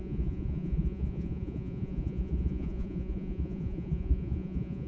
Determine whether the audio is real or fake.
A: fake